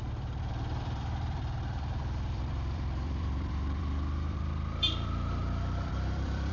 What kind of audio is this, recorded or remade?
remade